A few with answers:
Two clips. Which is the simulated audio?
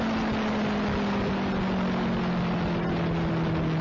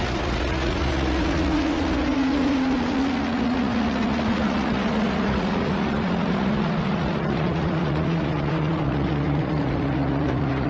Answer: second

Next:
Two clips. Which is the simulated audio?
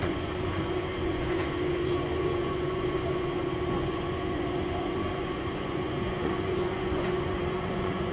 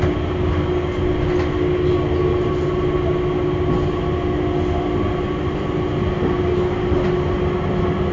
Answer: first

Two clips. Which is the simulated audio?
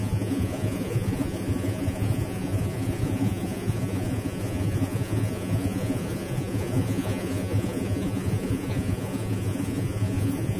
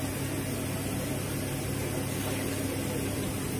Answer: first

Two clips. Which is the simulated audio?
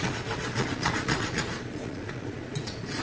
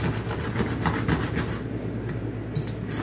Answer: first